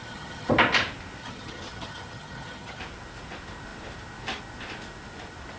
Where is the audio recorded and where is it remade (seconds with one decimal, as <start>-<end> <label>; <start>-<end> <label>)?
0.0-0.5 remade; 0.5-1.2 recorded; 1.2-2.8 remade; 2.8-5.6 recorded